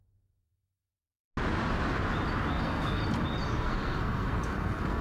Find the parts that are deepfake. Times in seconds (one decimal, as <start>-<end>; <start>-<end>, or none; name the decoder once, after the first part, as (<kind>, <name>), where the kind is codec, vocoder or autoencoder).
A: 0.0-0.9 (codec, SNAC); 2.5-3.0; 3.5-5.0